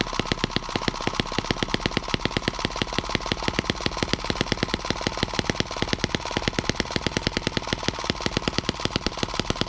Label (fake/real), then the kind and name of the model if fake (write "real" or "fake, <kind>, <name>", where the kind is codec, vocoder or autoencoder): real